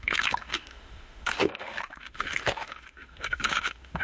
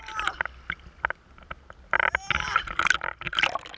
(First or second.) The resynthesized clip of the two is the first